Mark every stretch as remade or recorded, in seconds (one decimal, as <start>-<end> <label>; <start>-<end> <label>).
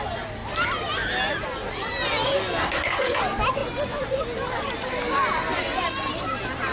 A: 0.0-2.6 recorded; 2.6-3.2 remade; 3.2-6.7 recorded